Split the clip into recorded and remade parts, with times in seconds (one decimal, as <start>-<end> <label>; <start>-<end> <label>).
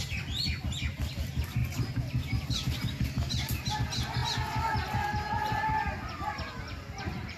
0.0-1.6 recorded; 1.6-3.7 remade; 3.7-7.4 recorded